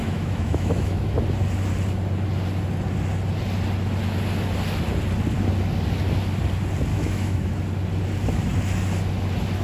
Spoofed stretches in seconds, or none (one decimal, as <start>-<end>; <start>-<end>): 0.0-1.1; 6.9-7.5